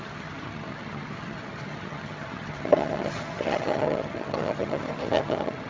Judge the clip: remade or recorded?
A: remade